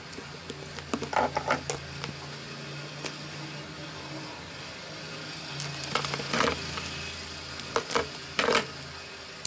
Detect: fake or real real